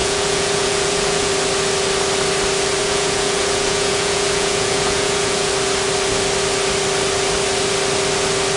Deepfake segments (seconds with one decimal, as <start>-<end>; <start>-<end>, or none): 0.0-1.3; 2.8-5.5